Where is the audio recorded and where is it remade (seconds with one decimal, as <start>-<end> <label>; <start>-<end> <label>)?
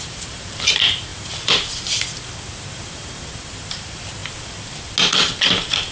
0.0-1.1 remade; 1.1-3.4 recorded; 3.4-4.2 remade; 4.2-5.1 recorded; 5.1-5.9 remade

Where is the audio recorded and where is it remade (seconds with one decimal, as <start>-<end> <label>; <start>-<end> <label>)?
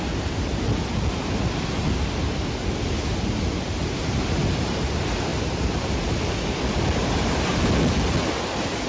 0.0-5.3 recorded; 5.3-5.9 remade; 5.9-7.0 recorded; 7.0-7.5 remade; 7.5-8.9 recorded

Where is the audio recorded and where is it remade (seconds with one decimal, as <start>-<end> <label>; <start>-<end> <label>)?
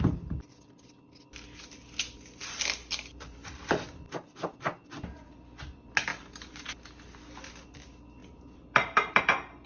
0.0-6.1 recorded; 6.1-6.7 remade; 6.7-8.2 recorded; 8.2-9.2 remade; 9.2-9.7 recorded